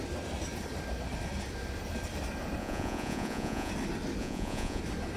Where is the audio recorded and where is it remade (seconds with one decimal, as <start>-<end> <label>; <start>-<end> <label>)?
0.0-2.6 recorded; 2.6-3.7 remade; 3.7-4.2 recorded; 4.2-4.8 remade; 4.8-5.2 recorded